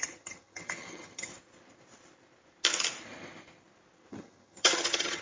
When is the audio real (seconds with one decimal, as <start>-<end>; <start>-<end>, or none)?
1.3-4.1